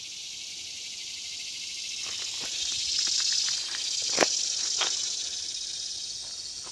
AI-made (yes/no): no